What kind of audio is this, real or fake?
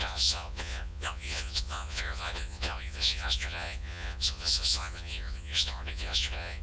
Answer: fake